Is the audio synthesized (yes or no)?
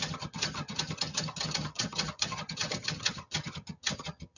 yes